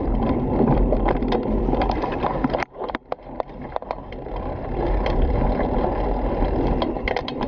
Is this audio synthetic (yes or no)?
yes